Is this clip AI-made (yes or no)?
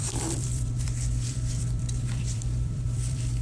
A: yes